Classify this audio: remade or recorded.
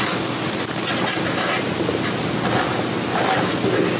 recorded